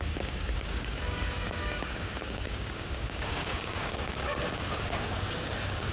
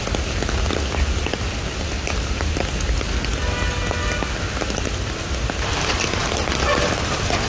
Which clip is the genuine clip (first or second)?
second